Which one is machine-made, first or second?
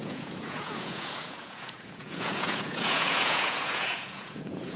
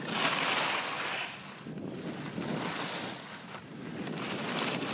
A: first